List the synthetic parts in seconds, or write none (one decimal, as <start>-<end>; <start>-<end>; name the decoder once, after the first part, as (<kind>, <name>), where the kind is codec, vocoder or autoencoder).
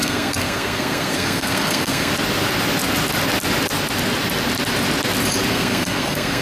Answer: 0.0-2.1 (codec, SNAC); 5.5-6.4